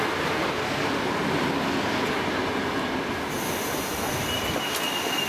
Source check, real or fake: real